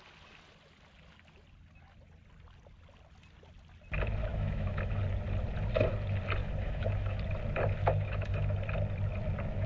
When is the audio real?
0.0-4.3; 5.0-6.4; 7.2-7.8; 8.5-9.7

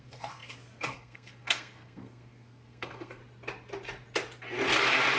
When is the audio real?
3.2-5.2